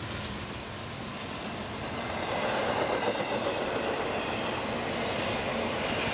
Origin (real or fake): real